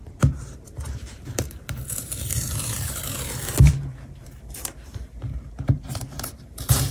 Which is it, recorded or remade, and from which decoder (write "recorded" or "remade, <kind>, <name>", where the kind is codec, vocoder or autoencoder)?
remade, vocoder, BigVGAN v2